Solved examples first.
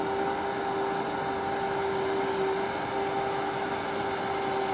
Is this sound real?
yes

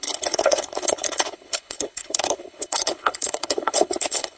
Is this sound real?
no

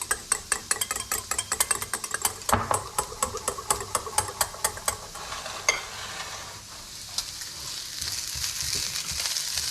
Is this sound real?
yes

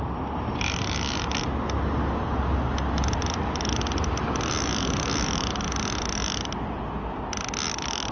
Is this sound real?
yes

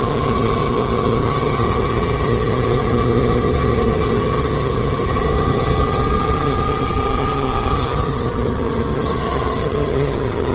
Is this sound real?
no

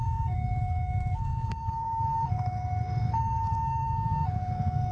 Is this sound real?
no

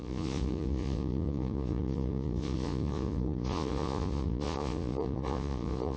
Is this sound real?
no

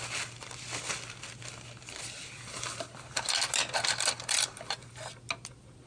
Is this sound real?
yes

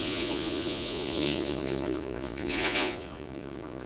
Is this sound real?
no